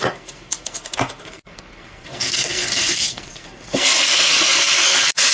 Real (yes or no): no